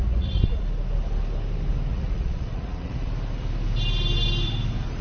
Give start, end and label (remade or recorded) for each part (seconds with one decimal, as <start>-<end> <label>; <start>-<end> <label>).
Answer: 0.0-0.6 remade; 0.6-1.9 recorded; 1.9-3.1 remade; 3.1-5.0 recorded

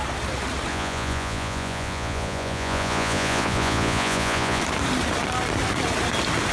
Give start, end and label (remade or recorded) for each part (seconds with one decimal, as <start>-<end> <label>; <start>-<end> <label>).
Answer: 0.0-0.7 recorded; 0.7-4.6 remade; 4.6-6.5 recorded

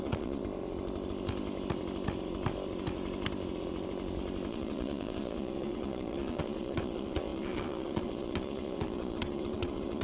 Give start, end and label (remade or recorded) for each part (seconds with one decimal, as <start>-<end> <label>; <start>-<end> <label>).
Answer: 0.0-0.4 remade; 0.4-4.5 recorded; 4.5-10.0 remade

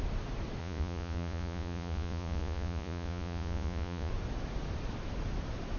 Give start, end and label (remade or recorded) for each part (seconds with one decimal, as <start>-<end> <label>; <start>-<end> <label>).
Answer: 0.0-0.6 recorded; 0.6-4.1 remade; 4.1-5.8 recorded

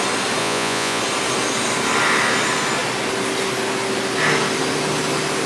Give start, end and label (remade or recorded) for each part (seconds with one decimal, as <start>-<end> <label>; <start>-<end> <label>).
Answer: 0.0-0.4 recorded; 0.4-1.0 remade; 1.0-5.5 recorded

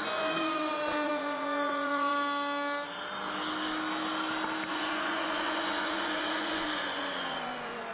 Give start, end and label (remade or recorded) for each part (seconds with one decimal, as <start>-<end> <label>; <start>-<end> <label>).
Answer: 0.0-2.1 remade; 2.1-4.7 recorded; 4.7-7.9 remade

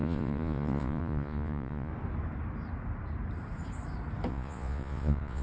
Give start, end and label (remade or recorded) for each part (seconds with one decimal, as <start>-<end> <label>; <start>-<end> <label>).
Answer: 0.0-1.9 remade; 1.9-4.3 recorded; 4.3-5.4 remade

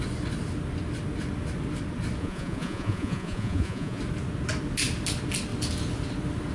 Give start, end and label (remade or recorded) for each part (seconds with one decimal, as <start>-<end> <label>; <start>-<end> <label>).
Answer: 0.0-2.2 recorded; 2.2-4.0 remade; 4.0-6.5 recorded